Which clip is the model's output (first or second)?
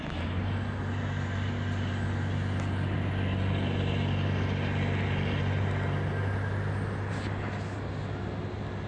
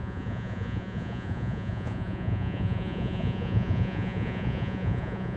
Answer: second